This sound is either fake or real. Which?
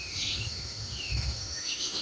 fake